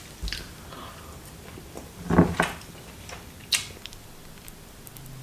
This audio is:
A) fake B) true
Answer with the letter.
B